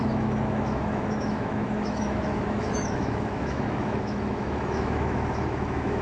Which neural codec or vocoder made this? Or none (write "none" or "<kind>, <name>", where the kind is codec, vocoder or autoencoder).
autoencoder, DAC-VAE